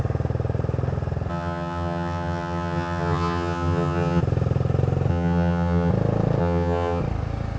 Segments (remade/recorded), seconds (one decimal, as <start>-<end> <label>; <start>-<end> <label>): 0.0-1.3 recorded; 1.3-4.2 remade; 4.2-5.1 recorded; 5.1-5.9 remade; 5.9-6.4 recorded; 6.4-7.0 remade; 7.0-7.6 recorded